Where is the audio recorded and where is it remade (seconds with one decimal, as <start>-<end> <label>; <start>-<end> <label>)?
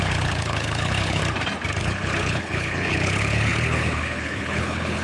0.0-1.2 remade; 1.2-1.8 recorded; 1.8-5.0 remade